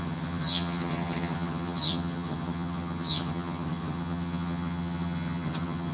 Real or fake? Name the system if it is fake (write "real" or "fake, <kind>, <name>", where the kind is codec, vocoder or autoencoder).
fake, vocoder, HiFi-GAN